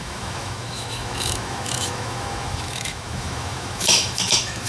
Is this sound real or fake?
fake